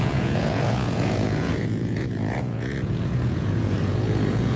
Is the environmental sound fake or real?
fake